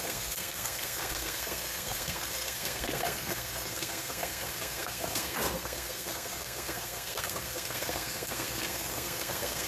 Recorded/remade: remade